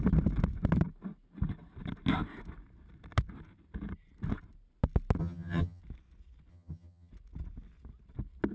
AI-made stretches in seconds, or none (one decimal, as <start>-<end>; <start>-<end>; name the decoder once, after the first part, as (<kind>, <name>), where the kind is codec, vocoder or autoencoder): 5.2-5.8 (vocoder, HiFi-GAN); 6.5-7.1